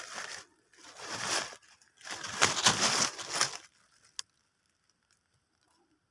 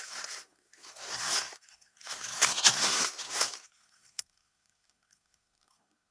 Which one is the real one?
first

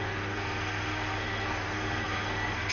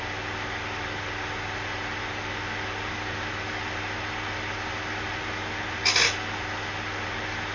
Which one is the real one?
second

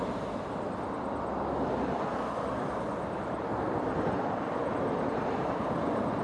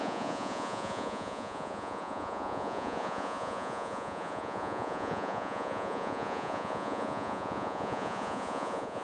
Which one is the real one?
first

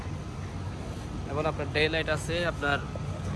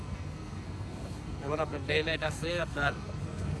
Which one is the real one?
first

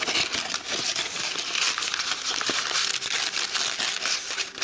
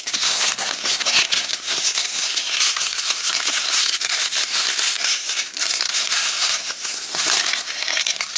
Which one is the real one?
first